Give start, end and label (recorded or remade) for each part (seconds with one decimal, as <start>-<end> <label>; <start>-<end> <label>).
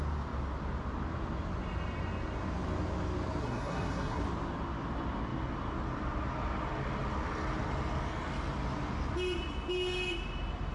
0.0-3.4 recorded; 3.4-4.2 remade; 4.2-10.7 recorded